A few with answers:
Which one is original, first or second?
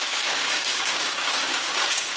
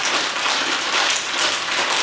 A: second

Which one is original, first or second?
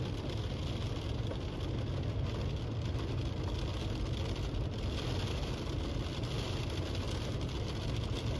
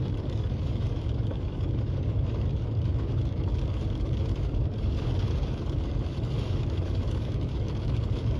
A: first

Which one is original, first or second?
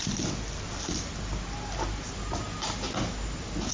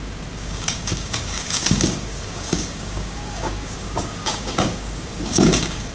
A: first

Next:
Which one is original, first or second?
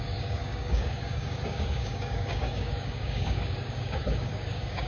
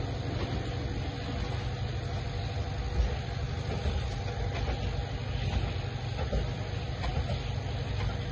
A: second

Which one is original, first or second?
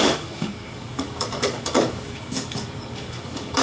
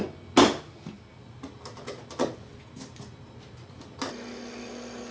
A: second